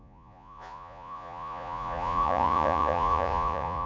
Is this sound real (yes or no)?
no